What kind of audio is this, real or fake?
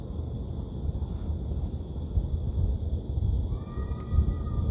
real